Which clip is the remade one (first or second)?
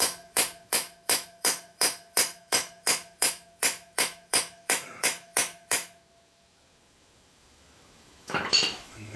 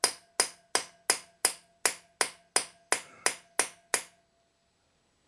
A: first